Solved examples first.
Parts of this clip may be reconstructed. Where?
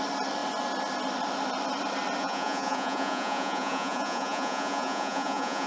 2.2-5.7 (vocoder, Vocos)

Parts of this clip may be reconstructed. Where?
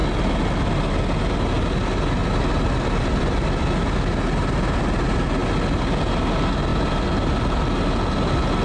2.2-3.7 (vocoder, BigVGAN v2); 6.7-7.3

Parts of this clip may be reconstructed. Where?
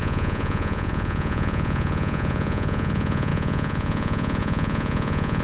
0.0-5.4 (vocoder, Vocos)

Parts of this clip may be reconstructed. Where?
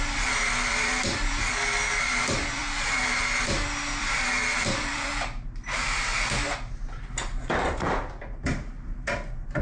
0.0-6.1 (vocoder, BigVGAN v2); 7.4-9.6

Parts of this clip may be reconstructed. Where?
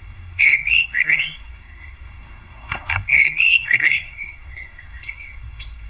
0.0-5.9 (codec, SNAC)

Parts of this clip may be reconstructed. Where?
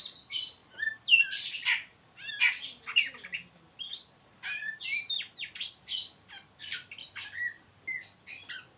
none